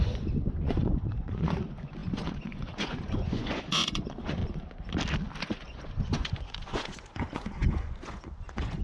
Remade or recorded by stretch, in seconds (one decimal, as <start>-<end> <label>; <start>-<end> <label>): 0.0-4.4 remade; 4.4-5.4 recorded; 5.4-8.8 remade